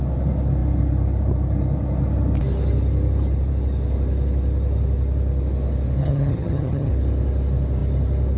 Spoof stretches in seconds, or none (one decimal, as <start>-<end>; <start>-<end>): 6.0-6.9